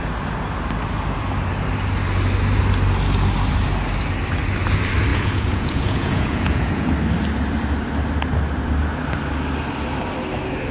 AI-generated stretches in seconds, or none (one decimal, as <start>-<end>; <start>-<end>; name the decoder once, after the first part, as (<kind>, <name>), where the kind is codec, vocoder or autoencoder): 5.1-6.9 (vocoder, Vocos)